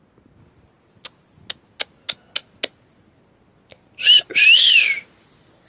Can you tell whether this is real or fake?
real